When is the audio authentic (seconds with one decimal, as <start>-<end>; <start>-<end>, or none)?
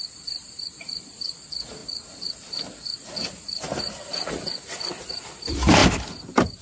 1.8-5.0; 5.8-6.6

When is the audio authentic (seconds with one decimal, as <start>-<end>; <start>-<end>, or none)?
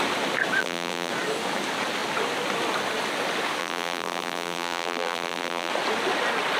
0.0-0.6; 1.1-3.6; 5.7-6.6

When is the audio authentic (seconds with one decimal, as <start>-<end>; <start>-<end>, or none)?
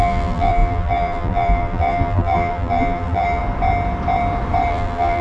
3.4-4.7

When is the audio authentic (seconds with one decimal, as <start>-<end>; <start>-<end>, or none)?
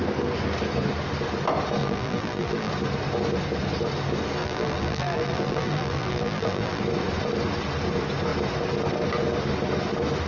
0.0-1.8; 2.7-4.4; 6.8-10.3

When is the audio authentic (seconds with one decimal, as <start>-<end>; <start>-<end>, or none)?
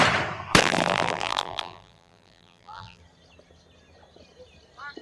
0.0-0.6; 3.0-5.0